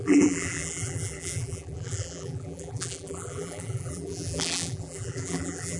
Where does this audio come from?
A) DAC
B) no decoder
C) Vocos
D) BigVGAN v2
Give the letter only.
D